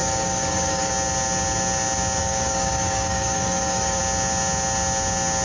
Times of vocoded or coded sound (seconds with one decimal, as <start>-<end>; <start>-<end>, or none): 0.0-0.9; 2.2-4.0